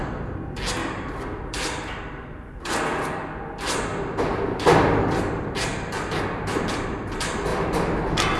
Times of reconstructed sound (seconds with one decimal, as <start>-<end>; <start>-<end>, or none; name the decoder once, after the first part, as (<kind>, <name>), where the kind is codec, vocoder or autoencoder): 0.8-2.7 (vocoder, BigVGAN v2); 7.5-8.4